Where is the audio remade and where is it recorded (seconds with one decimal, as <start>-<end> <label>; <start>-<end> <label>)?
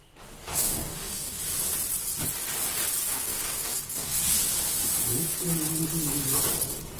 0.0-0.5 recorded; 0.5-1.4 remade; 1.4-3.0 recorded; 3.0-4.2 remade; 4.2-7.0 recorded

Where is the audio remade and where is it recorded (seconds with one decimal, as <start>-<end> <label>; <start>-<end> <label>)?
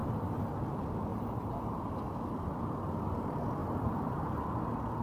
0.0-0.5 remade; 0.5-1.1 recorded; 1.1-1.8 remade; 1.8-3.6 recorded; 3.6-4.4 remade; 4.4-5.0 recorded